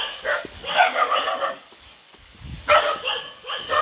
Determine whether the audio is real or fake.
fake